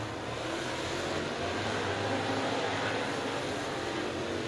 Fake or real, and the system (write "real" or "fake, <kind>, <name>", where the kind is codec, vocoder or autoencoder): real